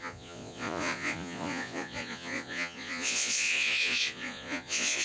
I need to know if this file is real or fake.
fake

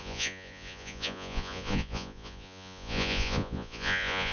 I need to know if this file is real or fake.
fake